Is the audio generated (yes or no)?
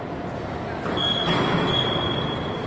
no